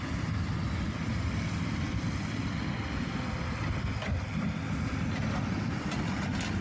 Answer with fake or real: real